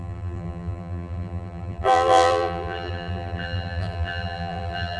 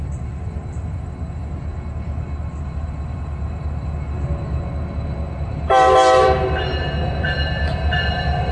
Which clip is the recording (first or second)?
second